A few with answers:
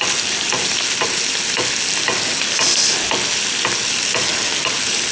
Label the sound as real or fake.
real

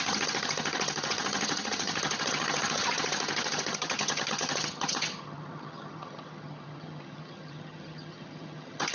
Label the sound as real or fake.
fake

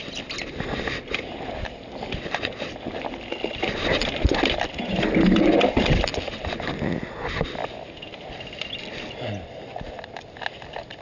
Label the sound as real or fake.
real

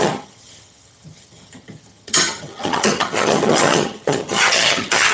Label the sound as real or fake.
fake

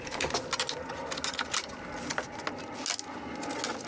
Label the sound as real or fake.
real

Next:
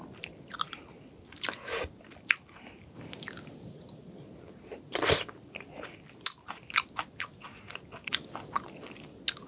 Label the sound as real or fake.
real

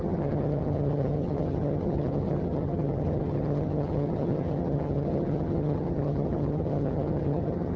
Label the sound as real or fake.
fake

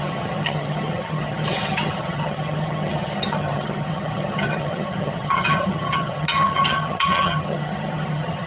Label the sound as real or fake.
fake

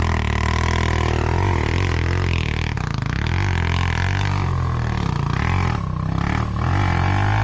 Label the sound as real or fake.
real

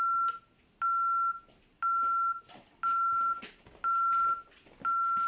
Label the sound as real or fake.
real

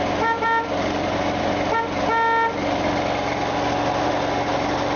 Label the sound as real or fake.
real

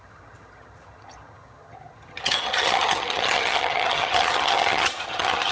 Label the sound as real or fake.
fake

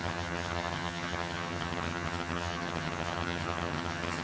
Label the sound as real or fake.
fake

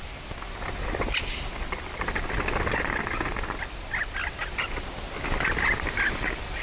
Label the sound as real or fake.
real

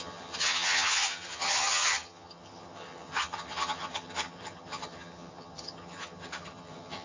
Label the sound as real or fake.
fake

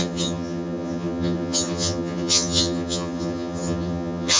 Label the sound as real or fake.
fake